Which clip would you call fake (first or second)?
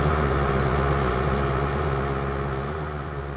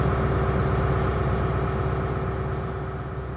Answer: first